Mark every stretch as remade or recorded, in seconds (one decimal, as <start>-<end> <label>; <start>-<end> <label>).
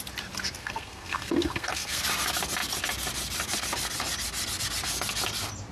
0.0-0.6 recorded; 0.6-2.0 remade; 2.0-5.7 recorded